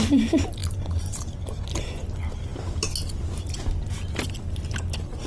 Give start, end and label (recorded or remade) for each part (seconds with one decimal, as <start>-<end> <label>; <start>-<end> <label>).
0.0-0.6 recorded; 0.6-1.2 remade; 1.2-5.3 recorded